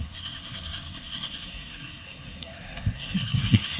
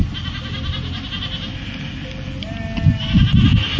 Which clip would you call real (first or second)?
second